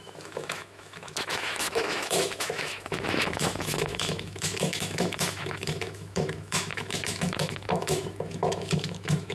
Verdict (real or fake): fake